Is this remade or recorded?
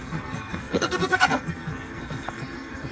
remade